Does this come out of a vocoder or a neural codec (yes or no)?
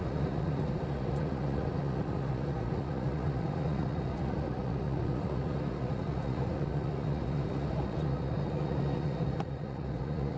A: yes